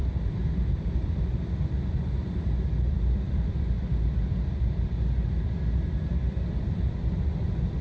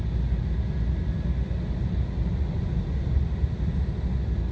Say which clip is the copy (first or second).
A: first